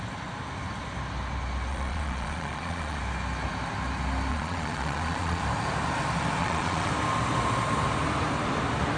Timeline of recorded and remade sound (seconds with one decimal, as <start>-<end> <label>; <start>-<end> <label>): 0.0-1.7 recorded; 1.7-3.0 remade; 3.0-4.3 recorded; 4.3-5.4 remade; 5.4-6.4 recorded; 6.4-6.9 remade; 6.9-9.0 recorded